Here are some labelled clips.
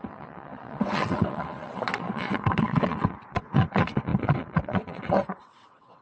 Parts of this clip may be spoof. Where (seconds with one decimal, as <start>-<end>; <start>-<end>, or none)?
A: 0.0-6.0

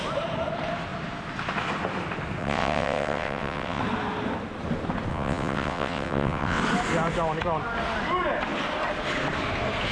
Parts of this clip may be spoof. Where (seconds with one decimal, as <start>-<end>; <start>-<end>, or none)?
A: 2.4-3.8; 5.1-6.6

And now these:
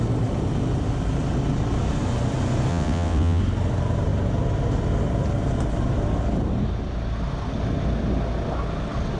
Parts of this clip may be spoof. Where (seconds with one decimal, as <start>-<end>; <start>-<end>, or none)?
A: 2.7-3.4

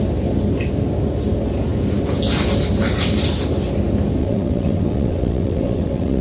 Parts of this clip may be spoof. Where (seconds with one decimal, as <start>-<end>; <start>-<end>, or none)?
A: 4.2-6.2